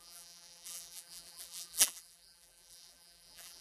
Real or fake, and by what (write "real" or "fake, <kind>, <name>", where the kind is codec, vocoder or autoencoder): fake, vocoder, BigVGAN v2